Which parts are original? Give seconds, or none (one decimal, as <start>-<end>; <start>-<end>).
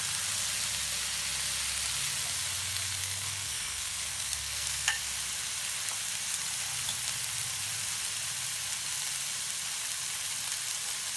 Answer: 0.0-3.0; 5.0-11.2